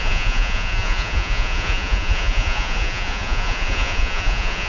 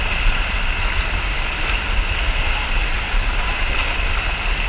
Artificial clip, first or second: first